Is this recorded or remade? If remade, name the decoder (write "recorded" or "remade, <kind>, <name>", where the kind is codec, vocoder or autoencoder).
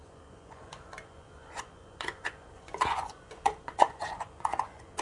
remade, vocoder, Vocos